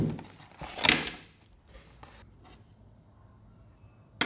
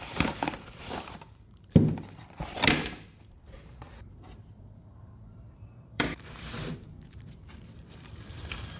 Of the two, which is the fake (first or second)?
second